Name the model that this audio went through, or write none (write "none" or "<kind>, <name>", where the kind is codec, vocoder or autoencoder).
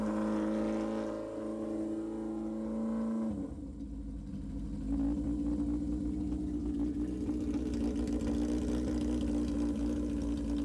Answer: none